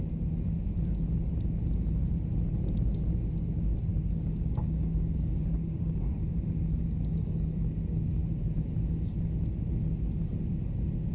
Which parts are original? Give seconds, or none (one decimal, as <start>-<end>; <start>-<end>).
0.0-3.9; 7.3-11.1